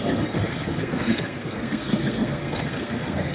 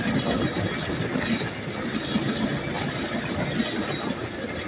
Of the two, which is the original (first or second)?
second